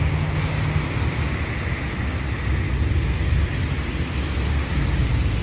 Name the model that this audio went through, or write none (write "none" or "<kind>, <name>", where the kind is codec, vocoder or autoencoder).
none